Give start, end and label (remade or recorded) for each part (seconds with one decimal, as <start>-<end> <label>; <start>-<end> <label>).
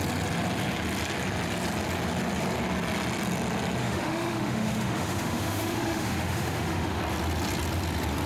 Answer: 0.0-3.8 recorded; 3.8-7.0 remade; 7.0-8.3 recorded